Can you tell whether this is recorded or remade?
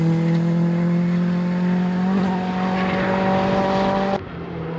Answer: recorded